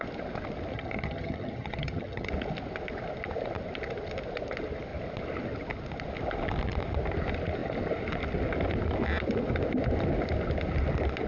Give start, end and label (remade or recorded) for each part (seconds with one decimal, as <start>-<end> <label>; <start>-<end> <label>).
0.0-0.7 recorded; 0.7-2.3 remade; 2.3-11.3 recorded